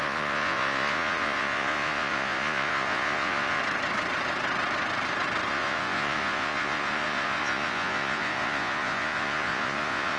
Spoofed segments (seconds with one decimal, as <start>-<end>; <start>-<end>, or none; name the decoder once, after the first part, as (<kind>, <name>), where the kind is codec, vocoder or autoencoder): 0.0-3.6 (vocoder, Vocos); 5.5-10.2